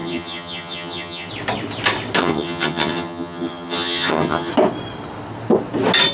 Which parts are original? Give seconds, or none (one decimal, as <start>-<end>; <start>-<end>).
1.3-2.2; 4.5-6.1